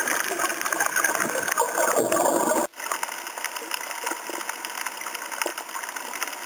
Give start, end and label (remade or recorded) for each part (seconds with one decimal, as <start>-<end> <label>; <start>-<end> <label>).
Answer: 0.0-6.5 recorded